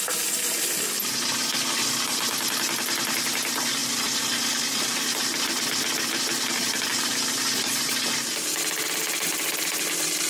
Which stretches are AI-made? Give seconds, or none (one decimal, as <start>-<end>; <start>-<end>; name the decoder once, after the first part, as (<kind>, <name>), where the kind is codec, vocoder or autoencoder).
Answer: none